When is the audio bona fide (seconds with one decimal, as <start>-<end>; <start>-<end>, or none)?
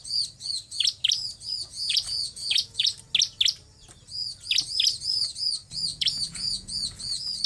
0.0-1.6; 2.9-5.9; 7.1-7.5